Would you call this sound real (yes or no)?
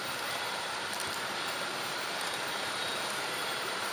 no